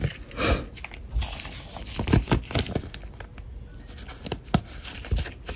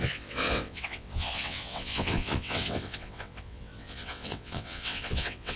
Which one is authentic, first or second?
first